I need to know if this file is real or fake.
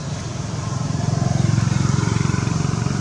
real